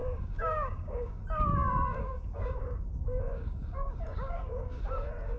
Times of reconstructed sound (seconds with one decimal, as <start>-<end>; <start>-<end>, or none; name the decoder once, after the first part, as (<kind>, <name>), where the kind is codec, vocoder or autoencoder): 0.0-1.2 (codec, DAC); 1.6-4.8